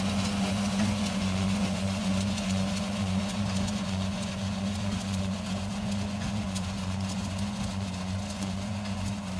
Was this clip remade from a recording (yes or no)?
yes